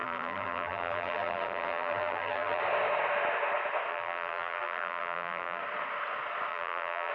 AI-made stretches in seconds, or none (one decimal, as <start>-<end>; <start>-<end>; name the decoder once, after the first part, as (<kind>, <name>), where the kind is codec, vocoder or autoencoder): 0.0-2.6 (vocoder, BigVGAN v2); 3.9-5.6; 6.5-7.1